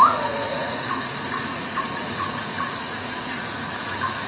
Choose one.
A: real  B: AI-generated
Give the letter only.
B